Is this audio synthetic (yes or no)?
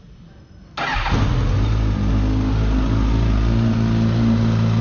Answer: no